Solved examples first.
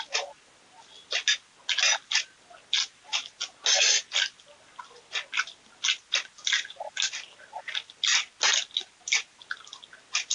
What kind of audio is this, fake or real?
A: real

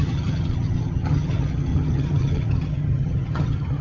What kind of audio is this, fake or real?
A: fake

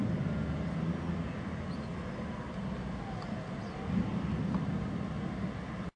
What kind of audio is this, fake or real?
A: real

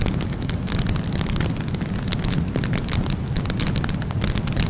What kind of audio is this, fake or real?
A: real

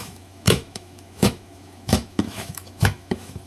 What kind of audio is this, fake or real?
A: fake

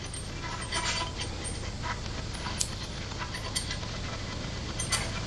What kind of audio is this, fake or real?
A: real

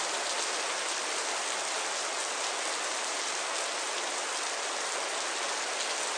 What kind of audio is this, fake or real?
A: real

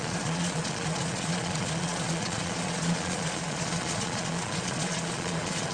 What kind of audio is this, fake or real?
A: fake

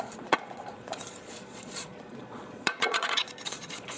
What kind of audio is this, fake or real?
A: fake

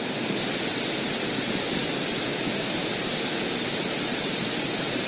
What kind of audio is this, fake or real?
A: fake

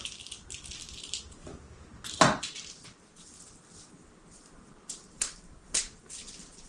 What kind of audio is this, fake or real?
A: real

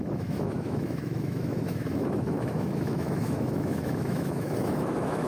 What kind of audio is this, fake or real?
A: fake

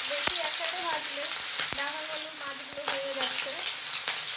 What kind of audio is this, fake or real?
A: real